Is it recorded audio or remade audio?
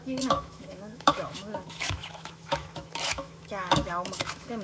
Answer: remade